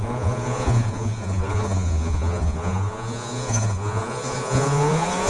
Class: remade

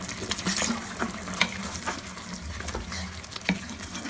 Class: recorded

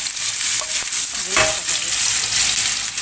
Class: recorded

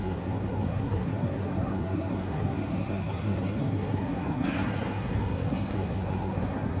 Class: remade